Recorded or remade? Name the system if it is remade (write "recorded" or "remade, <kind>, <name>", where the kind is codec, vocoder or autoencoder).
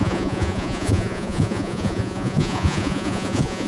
remade, vocoder, Vocos